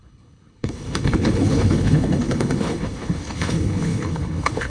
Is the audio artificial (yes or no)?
yes